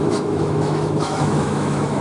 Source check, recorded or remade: remade